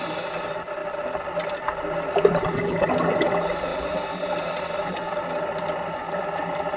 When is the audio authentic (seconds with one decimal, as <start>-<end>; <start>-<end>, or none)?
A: 0.0-6.8